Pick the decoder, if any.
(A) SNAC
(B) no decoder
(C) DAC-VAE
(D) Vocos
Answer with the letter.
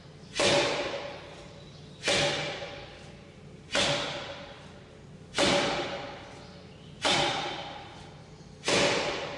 B